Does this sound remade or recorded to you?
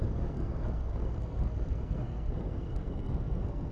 remade